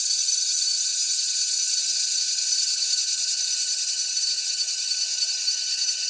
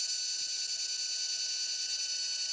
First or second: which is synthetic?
first